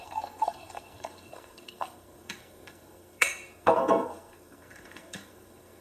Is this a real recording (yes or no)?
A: no